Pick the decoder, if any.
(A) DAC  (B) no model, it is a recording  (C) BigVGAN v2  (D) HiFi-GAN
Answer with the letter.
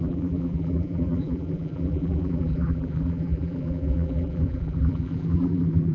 C